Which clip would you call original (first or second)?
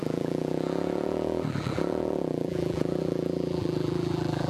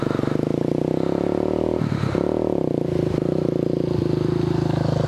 second